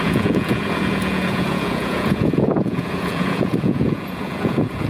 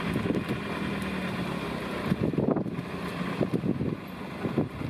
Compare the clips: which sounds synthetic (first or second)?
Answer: first